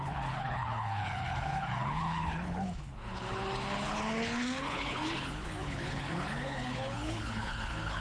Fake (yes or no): yes